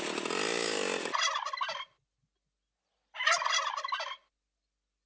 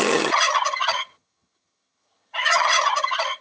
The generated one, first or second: second